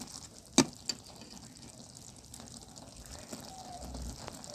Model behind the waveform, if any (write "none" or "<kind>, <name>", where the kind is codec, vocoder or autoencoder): none